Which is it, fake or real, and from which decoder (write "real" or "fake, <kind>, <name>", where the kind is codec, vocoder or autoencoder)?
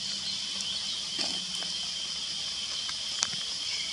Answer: real